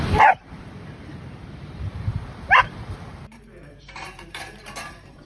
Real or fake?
fake